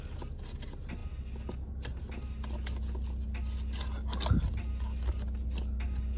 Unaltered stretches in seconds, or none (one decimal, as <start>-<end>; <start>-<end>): 0.0-6.2